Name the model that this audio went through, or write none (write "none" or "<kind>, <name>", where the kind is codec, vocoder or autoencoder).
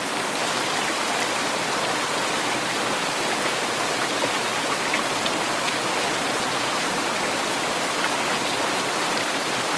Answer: none